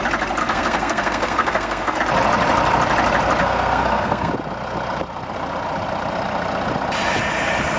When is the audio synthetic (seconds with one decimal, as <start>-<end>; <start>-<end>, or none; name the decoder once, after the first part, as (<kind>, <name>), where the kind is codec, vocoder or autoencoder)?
0.4-2.0 (codec, SNAC); 3.4-4.3